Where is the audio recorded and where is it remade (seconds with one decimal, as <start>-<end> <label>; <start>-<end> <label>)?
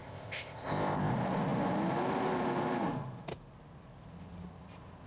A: 0.0-1.1 remade; 1.1-5.1 recorded